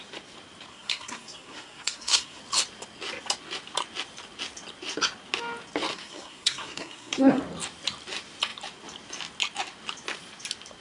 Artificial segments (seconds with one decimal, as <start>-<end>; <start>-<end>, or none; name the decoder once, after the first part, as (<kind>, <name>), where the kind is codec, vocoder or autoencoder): 0.7-2.4 (codec, SNAC); 5.9-7.4